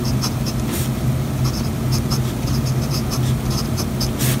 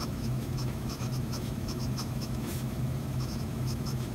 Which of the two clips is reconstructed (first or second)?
second